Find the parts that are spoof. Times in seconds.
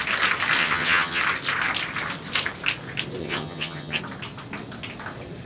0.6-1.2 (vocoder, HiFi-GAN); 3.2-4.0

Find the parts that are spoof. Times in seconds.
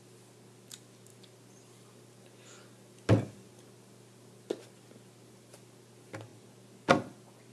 none